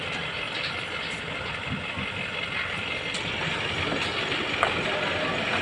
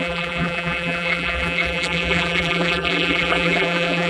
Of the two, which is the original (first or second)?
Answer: first